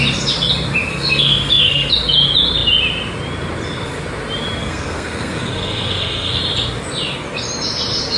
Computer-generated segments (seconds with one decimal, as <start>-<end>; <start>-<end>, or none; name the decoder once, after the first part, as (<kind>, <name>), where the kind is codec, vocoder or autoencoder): 0.9-1.9 (codec, SNAC); 4.6-6.4